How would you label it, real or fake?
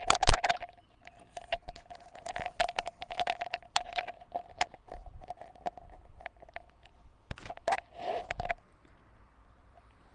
fake